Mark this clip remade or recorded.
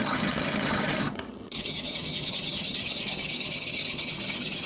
remade